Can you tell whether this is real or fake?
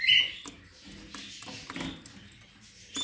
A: real